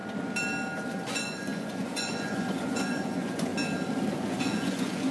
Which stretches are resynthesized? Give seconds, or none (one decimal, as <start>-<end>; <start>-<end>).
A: 0.9-3.5; 4.1-5.1